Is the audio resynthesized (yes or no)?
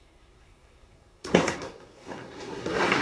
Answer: yes